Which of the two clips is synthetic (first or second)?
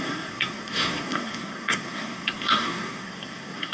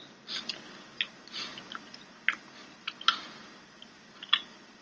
first